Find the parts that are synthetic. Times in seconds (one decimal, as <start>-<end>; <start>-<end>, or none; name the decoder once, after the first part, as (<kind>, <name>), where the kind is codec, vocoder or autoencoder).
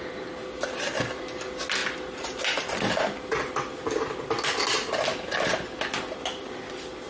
1.8-4.0 (vocoder, BigVGAN v2)